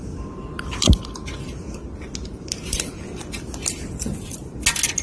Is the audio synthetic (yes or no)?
no